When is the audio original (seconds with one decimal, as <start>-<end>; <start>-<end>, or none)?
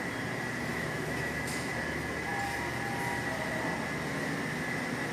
0.0-0.7; 1.7-5.1